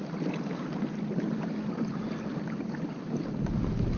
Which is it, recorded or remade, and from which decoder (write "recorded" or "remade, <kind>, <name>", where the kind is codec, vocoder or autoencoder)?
recorded